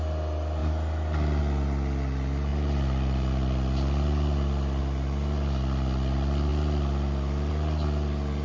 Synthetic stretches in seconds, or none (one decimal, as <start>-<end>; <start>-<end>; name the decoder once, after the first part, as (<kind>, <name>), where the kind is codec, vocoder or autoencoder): none